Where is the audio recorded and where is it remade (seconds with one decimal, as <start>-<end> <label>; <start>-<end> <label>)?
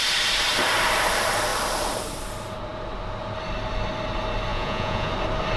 0.0-4.5 recorded; 4.5-5.1 remade; 5.1-5.6 recorded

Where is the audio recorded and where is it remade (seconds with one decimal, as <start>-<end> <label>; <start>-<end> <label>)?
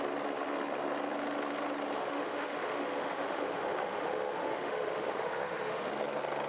0.0-2.0 recorded; 2.0-5.9 remade; 5.9-6.5 recorded